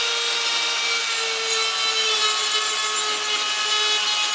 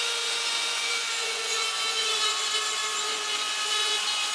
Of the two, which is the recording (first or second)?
first